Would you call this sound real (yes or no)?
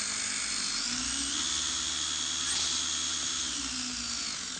yes